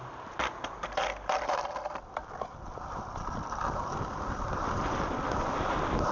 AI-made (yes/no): yes